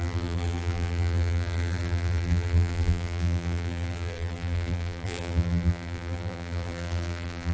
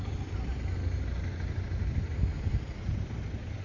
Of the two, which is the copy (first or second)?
first